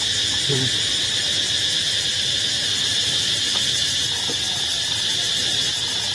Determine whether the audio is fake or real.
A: real